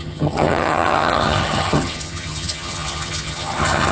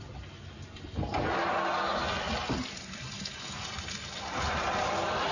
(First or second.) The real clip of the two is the second